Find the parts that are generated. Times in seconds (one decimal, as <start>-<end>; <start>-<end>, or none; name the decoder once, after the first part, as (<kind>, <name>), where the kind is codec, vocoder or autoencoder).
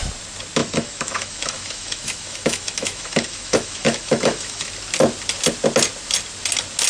0.6-4.7 (autoencoder, DAC-VAE)